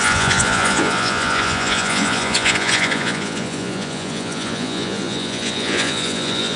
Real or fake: fake